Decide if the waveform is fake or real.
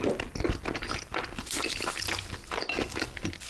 real